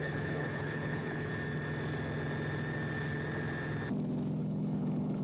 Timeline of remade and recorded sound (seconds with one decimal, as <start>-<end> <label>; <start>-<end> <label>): 0.0-1.3 remade; 1.3-4.4 recorded; 4.4-5.2 remade

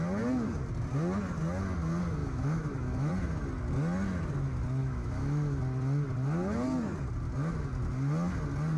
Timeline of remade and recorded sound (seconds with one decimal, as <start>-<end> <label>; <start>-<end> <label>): 0.0-2.2 recorded; 2.2-3.1 remade; 3.1-4.8 recorded; 4.8-5.6 remade; 5.6-8.8 recorded

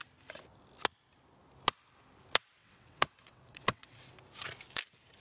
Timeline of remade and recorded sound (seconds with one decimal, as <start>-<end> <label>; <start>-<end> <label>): 0.0-2.6 recorded; 2.6-4.1 remade; 4.1-5.2 recorded

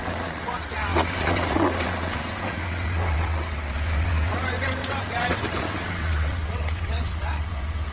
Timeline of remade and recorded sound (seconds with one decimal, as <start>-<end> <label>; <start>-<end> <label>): 0.0-7.9 remade

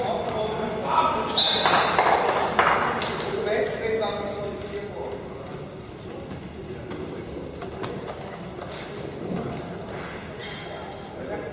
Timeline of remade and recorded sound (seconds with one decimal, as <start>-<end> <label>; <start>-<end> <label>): 0.0-11.5 recorded

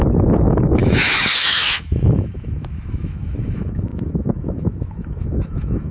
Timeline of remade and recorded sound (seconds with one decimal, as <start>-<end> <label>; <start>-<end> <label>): 0.0-5.9 remade